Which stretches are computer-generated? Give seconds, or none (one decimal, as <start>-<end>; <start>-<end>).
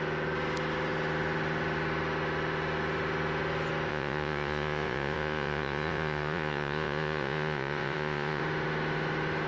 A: 3.9-8.4